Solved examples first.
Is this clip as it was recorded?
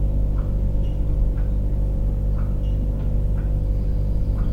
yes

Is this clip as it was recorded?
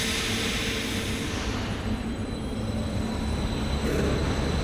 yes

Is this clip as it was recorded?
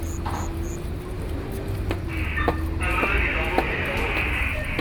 yes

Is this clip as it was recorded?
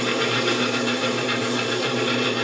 no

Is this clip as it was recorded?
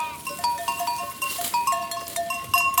yes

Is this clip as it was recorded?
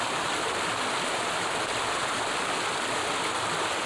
yes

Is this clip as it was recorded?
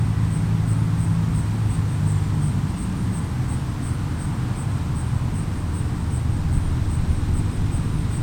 yes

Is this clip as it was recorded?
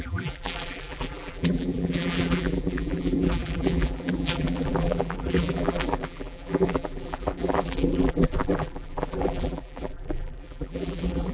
no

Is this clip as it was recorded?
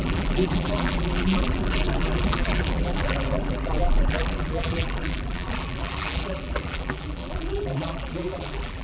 no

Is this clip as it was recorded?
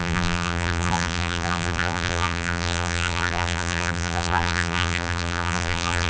no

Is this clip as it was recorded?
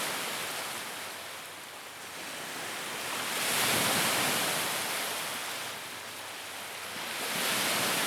yes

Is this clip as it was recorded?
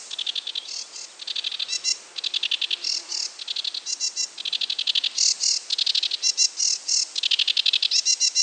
yes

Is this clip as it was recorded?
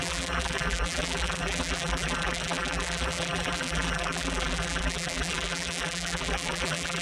no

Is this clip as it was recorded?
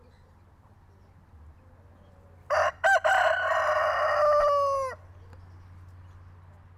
yes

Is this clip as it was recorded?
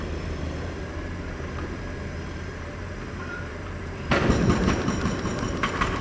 no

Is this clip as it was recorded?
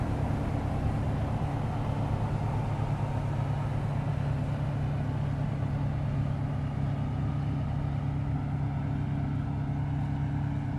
yes